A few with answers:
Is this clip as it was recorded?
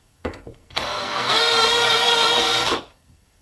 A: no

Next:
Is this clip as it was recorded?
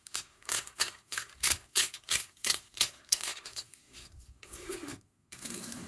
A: no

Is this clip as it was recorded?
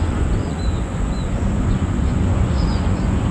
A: no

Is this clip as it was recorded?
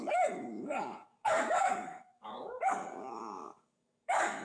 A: no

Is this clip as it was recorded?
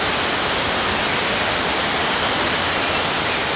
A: yes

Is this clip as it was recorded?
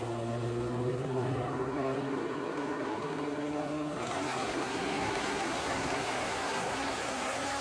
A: no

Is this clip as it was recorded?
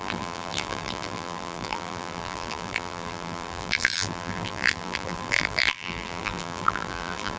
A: no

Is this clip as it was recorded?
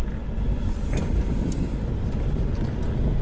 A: yes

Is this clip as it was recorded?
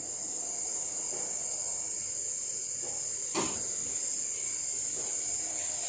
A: yes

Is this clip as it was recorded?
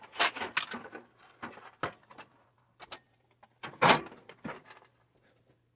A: yes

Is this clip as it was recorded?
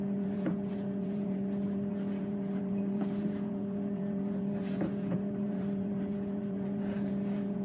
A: no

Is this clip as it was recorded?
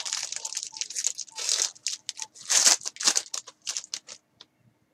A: yes